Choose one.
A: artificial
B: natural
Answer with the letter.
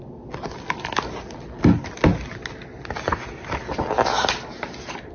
B